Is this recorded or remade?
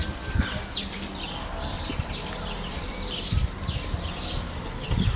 remade